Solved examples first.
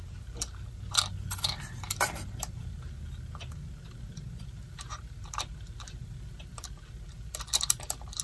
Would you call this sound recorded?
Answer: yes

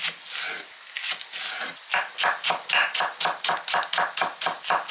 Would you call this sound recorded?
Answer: yes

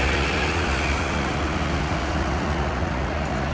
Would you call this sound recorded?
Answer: no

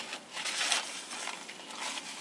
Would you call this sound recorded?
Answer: yes